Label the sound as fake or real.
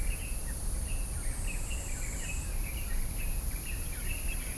real